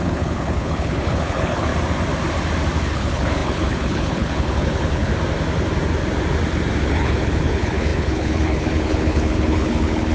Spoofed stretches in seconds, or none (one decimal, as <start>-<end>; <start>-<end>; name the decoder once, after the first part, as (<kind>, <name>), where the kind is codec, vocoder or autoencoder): 0.0-1.7 (codec, HILCodec); 2.8-5.1; 6.8-10.1